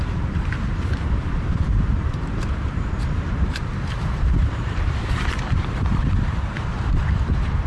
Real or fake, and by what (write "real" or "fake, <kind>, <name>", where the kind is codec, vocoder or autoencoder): fake, vocoder, BigVGAN v2